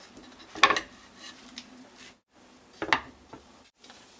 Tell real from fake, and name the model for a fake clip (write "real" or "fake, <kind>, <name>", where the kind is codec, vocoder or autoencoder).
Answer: real